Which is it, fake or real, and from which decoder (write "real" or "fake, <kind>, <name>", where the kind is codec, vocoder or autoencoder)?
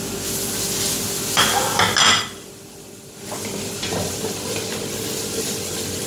real